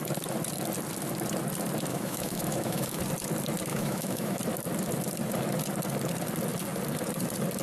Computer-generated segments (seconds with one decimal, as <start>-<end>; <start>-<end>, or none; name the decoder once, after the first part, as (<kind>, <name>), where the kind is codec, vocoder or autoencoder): 1.9-3.0 (autoencoder, DAC-VAE); 3.7-4.4

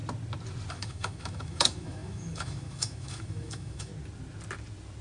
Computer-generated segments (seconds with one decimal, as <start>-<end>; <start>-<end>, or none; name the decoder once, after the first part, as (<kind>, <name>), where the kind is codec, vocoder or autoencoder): 0.7-3.9 (autoencoder, DAC-VAE)

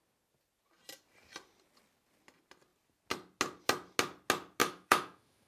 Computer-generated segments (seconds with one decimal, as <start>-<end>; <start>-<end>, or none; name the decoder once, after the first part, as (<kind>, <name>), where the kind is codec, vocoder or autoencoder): 4.6-5.5 (autoencoder, DAC-VAE)

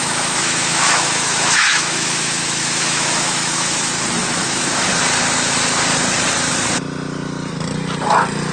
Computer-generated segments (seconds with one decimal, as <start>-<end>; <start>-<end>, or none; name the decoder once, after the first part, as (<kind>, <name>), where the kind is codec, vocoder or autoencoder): 0.0-3.9 (autoencoder, DAC-VAE); 4.4-4.9

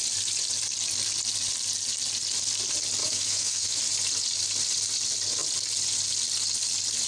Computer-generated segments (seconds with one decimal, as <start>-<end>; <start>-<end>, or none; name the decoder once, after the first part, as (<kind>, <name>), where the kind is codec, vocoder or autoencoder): 3.0-3.8 (autoencoder, DAC-VAE)

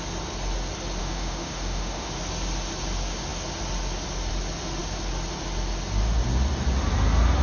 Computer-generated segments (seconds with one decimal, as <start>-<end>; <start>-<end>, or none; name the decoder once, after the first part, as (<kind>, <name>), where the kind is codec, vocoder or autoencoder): 1.0-2.1 (autoencoder, DAC-VAE)